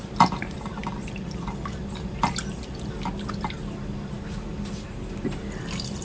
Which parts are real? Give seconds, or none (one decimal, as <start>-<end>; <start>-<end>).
0.0-6.0